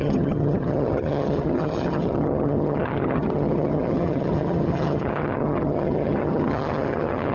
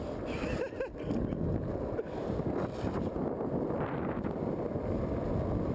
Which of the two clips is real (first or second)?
second